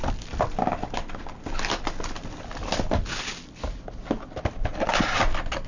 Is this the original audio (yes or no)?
yes